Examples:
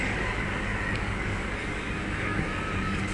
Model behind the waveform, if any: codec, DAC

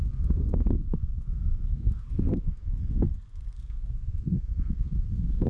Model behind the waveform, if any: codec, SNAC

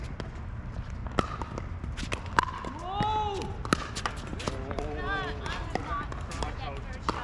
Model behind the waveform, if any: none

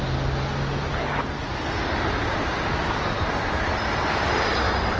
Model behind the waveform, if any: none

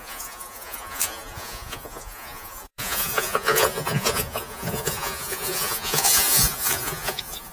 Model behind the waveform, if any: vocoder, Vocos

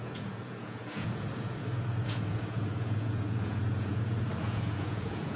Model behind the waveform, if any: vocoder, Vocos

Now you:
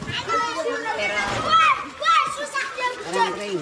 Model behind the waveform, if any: none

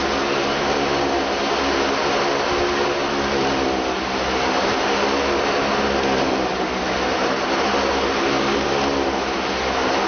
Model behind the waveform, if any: none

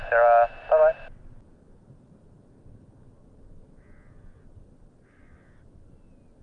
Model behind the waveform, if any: none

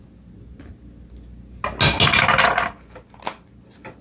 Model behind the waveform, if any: none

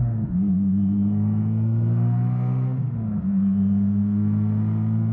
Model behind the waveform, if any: codec, SNAC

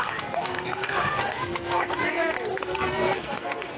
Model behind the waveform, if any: codec, SNAC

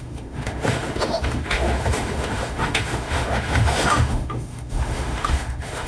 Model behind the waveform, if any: autoencoder, DAC-VAE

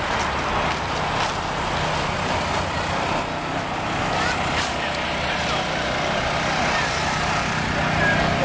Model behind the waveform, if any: none